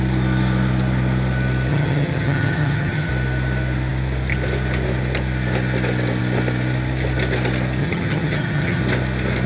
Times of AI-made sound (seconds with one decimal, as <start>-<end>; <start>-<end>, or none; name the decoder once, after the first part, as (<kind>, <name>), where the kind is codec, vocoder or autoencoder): 1.7-3.1 (vocoder, HiFi-GAN); 7.8-8.8

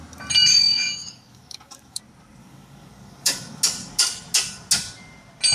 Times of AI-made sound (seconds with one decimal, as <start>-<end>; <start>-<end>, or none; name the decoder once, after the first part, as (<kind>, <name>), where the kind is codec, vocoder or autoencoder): 0.5-2.0 (codec, DAC); 2.4-3.6

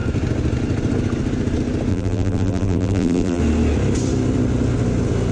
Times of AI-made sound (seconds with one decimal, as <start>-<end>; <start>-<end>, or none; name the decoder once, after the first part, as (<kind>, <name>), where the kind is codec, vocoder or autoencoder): 1.9-3.4 (vocoder, BigVGAN v2)

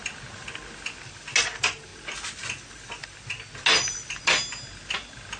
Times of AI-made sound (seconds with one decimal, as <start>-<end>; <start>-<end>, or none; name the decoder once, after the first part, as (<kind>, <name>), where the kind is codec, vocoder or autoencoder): none

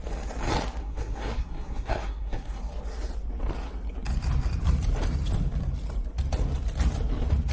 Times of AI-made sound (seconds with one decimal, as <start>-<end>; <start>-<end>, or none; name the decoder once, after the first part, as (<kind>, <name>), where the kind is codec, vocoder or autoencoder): 0.8-2.6 (codec, SNAC)

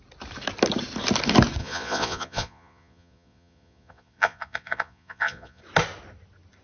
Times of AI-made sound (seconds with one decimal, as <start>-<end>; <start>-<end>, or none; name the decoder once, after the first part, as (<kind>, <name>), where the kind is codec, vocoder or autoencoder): 1.6-5.6 (vocoder, Vocos)

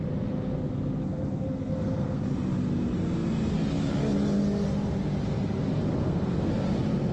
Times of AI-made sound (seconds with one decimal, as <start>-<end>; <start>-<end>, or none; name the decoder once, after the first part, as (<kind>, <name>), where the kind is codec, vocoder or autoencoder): 1.0-2.2 (codec, SNAC); 6.0-6.5